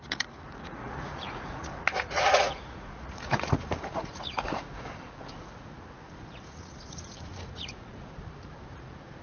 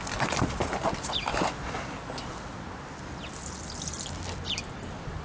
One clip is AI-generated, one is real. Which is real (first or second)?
second